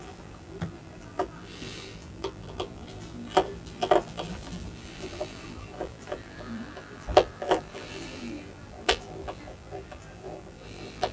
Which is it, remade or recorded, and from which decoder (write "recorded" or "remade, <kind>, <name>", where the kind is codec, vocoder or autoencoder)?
remade, vocoder, BigVGAN v2